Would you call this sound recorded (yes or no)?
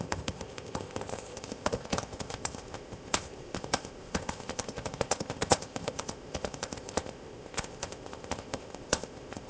no